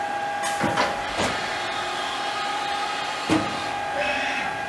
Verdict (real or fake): real